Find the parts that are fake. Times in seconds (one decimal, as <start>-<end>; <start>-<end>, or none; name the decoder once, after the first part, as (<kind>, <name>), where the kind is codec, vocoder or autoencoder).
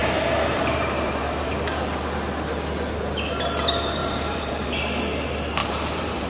0.0-1.5 (vocoder, BigVGAN v2); 4.0-4.8; 5.6-6.3